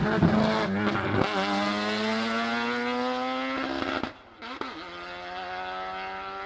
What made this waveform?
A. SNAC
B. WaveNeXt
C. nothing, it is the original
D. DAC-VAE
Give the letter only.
C